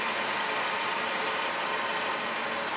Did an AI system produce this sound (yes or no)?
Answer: no